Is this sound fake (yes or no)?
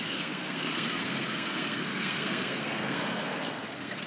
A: yes